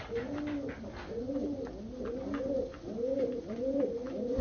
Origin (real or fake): real